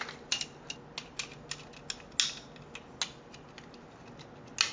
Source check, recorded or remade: recorded